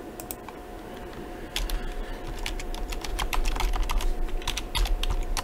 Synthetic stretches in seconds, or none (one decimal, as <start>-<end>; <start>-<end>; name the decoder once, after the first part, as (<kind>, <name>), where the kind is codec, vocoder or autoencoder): 3.1-3.6 (vocoder, BigVGAN v2)